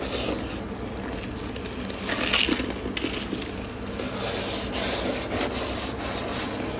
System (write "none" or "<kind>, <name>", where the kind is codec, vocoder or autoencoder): none